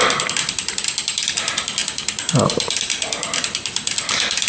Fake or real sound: fake